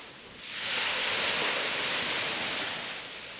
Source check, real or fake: real